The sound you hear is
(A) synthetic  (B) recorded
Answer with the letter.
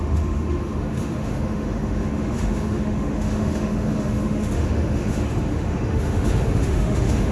A